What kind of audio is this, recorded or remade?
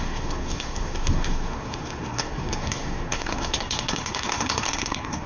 remade